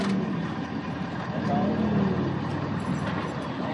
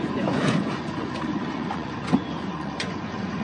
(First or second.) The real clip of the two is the first